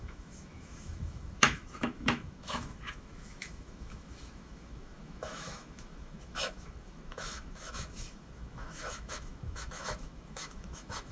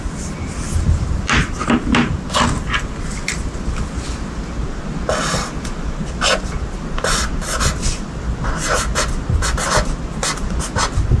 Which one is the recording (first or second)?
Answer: second